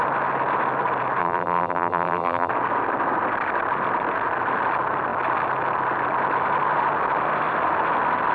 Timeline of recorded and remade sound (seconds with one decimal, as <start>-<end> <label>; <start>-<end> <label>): 0.0-1.2 recorded; 1.2-2.5 remade; 2.5-8.3 recorded